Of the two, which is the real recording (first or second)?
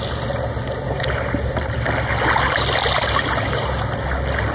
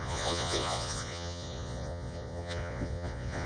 first